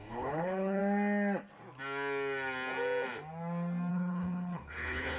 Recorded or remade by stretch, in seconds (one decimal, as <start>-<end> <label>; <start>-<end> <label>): 0.0-0.8 remade; 0.8-3.9 recorded; 3.9-5.2 remade